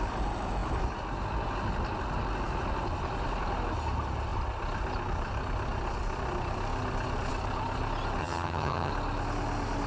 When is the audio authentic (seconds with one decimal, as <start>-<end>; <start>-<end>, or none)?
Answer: 0.0-8.2; 8.9-9.9